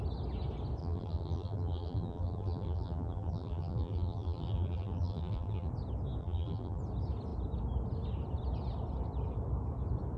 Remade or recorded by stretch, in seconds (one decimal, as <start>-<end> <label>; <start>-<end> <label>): 0.0-0.8 recorded; 0.8-5.7 remade; 5.7-6.2 recorded; 6.2-6.8 remade; 6.8-10.2 recorded